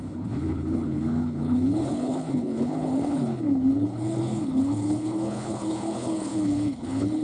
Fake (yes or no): yes